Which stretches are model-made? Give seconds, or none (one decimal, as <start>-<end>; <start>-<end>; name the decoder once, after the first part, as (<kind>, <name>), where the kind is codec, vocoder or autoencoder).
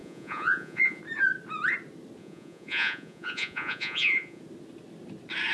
0.0-1.0 (vocoder, Vocos); 2.2-4.4